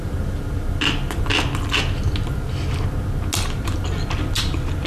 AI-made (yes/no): no